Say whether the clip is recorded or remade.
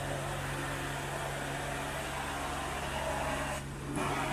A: recorded